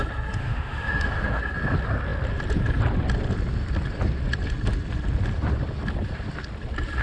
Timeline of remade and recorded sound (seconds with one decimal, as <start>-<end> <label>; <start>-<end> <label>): 0.0-0.4 recorded; 0.4-1.4 remade; 1.4-7.0 recorded